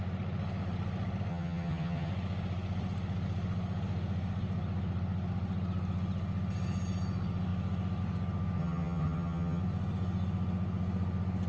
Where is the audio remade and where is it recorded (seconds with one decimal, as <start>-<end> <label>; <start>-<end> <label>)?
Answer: 0.0-1.3 recorded; 1.3-2.1 remade; 2.1-8.6 recorded; 8.6-9.6 remade; 9.6-11.5 recorded